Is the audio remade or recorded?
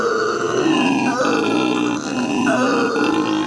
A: recorded